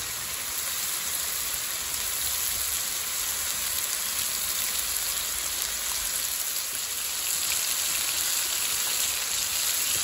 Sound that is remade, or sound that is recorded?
recorded